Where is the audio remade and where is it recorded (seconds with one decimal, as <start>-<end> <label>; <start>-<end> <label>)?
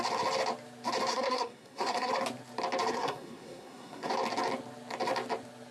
0.0-1.1 recorded; 1.1-2.1 remade; 2.1-2.9 recorded; 2.9-4.1 remade; 4.1-5.7 recorded